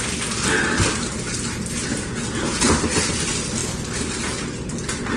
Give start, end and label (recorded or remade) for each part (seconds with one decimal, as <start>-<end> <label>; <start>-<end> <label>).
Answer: 0.0-1.9 recorded; 1.9-2.6 remade; 2.6-5.2 recorded